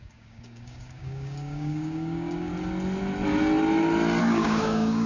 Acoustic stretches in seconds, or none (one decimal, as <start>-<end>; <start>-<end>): 2.5-4.2